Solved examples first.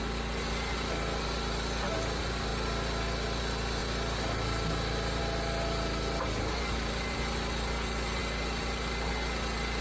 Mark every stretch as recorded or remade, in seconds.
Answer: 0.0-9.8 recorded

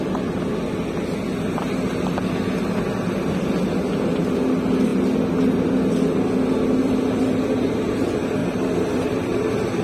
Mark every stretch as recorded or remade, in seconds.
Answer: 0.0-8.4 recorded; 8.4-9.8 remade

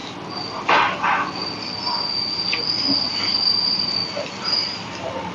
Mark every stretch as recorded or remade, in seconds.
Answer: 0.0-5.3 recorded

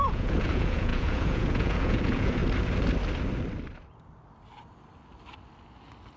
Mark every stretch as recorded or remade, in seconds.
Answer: 0.0-2.4 remade; 2.4-6.2 recorded